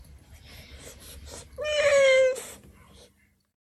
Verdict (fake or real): fake